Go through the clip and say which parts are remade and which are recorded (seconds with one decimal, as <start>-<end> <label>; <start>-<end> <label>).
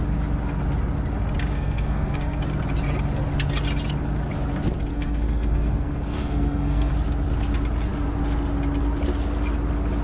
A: 0.0-1.5 recorded; 1.5-2.4 remade; 2.4-4.9 recorded; 4.9-6.9 remade; 6.9-10.0 recorded